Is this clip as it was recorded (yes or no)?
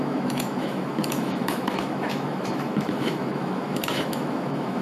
no